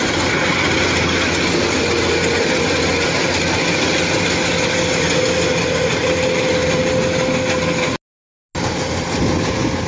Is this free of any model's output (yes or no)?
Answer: yes